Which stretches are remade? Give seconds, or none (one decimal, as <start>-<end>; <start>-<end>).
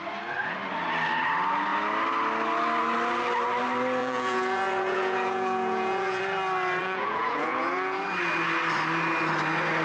4.0-6.2; 6.8-8.0